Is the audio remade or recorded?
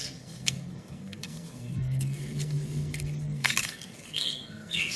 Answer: remade